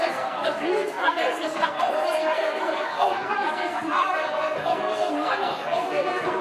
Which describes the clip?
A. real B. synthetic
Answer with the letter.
B